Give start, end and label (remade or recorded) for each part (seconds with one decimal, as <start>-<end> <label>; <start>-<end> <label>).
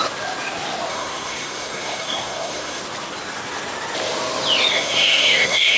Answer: 0.0-0.9 recorded; 0.9-2.8 remade; 2.8-4.7 recorded; 4.7-5.8 remade